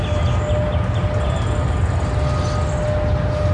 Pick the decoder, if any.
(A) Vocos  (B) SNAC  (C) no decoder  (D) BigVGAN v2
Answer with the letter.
C